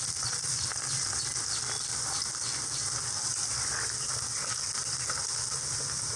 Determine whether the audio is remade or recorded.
recorded